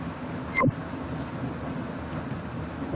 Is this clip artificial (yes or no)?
no